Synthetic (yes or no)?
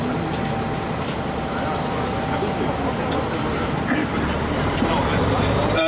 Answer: no